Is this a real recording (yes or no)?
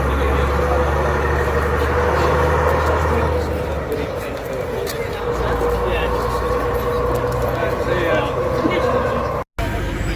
yes